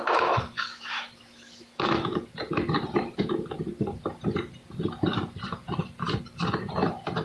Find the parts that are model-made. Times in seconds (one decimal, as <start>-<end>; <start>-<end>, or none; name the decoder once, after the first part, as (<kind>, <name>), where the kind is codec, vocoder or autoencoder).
0.0-2.2 (autoencoder, DAC-VAE)